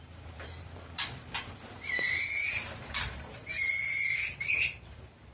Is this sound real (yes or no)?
no